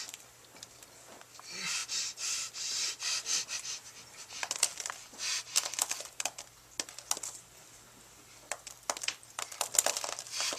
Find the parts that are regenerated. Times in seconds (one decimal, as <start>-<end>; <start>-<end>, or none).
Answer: none